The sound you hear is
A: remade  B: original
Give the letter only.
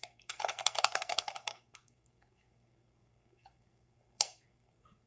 A